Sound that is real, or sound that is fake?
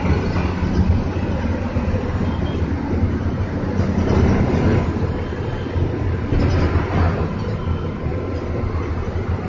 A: real